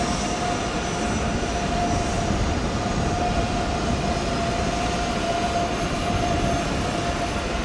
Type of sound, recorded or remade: recorded